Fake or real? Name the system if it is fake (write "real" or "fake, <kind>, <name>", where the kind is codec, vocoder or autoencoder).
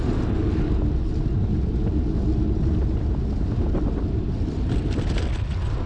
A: real